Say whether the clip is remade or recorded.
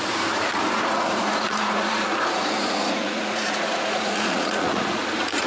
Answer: remade